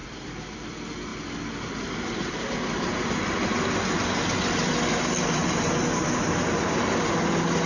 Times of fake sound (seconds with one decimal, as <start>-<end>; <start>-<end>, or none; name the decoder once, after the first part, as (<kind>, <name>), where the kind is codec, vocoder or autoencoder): 0.0-0.7 (vocoder, BigVGAN v2); 1.1-3.0